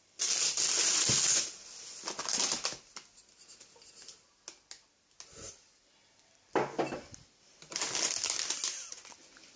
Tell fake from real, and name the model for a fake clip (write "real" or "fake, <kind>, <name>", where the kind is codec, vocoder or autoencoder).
real